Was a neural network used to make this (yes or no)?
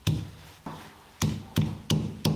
no